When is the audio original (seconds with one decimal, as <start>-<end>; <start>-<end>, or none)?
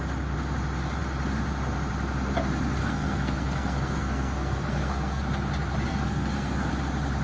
0.0-2.8; 5.2-5.9; 6.7-7.2